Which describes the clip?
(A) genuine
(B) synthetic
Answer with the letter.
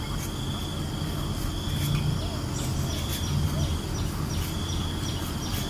A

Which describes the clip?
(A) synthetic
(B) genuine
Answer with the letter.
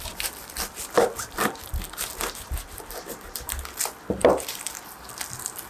B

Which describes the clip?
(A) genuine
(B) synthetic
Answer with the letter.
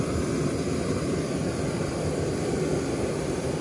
B